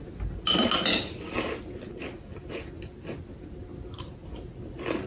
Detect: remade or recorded recorded